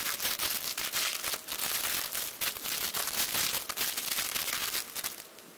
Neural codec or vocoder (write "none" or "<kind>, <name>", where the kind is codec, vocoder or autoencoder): none